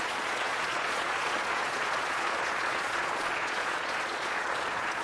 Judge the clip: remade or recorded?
remade